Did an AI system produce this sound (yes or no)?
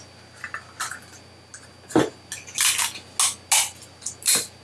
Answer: no